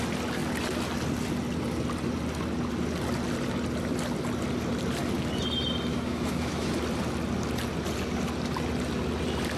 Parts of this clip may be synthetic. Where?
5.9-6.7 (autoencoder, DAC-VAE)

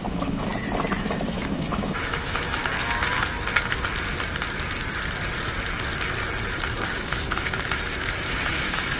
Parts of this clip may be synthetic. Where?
0.0-0.5 (autoencoder, DAC-VAE); 1.0-2.6; 6.9-9.0

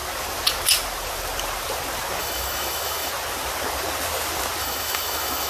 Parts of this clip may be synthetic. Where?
2.2-3.1 (autoencoder, DAC-VAE); 4.6-5.5

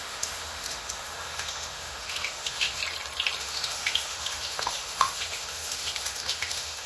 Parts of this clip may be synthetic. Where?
0.0-2.8 (autoencoder, DAC-VAE); 3.4-6.9